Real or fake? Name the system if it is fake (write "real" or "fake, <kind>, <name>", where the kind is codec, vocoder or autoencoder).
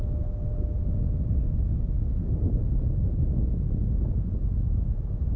real